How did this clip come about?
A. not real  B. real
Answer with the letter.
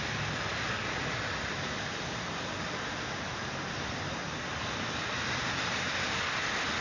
B